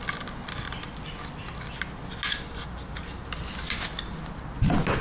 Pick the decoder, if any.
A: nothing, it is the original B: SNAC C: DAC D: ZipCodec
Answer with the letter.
A